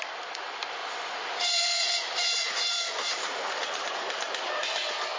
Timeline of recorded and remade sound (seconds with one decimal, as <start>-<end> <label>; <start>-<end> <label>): 0.0-0.8 recorded; 0.8-3.9 remade; 3.9-5.2 recorded